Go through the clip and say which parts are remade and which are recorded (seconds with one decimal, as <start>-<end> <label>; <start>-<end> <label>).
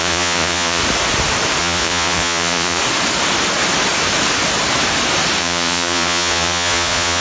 0.0-0.8 remade; 0.8-1.6 recorded; 1.6-2.8 remade; 2.8-5.4 recorded; 5.4-7.2 remade